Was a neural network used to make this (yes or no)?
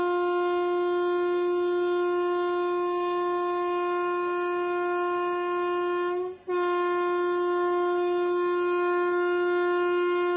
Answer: no